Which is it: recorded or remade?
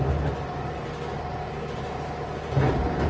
recorded